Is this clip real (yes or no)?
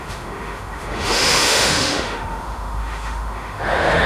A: no